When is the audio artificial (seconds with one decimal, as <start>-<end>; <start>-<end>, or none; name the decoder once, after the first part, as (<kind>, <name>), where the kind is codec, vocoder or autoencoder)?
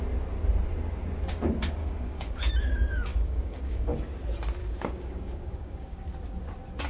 1.8-2.5 (codec, DAC); 3.1-4.0; 4.6-6.0